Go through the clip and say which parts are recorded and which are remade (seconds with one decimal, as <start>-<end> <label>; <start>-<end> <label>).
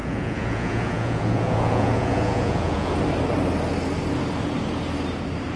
0.0-2.9 remade; 2.9-5.6 recorded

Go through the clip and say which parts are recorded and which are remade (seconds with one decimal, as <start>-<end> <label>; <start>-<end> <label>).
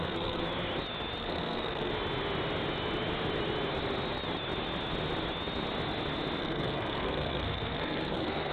0.0-0.4 remade; 0.4-1.2 recorded; 1.2-1.9 remade; 1.9-6.4 recorded; 6.4-8.5 remade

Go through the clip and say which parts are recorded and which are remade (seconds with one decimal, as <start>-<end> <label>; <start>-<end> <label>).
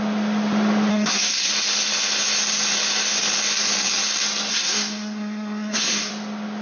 0.0-0.9 recorded; 0.9-1.5 remade; 1.5-4.5 recorded; 4.5-6.1 remade; 6.1-6.6 recorded